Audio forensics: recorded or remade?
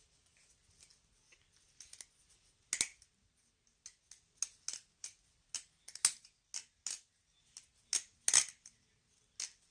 recorded